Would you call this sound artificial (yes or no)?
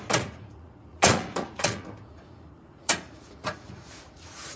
yes